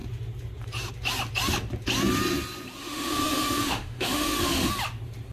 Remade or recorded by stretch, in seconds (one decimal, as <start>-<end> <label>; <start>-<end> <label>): 0.0-2.8 recorded; 2.8-4.7 remade; 4.7-5.3 recorded